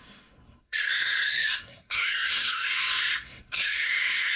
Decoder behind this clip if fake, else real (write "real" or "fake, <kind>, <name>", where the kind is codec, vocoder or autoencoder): fake, codec, SNAC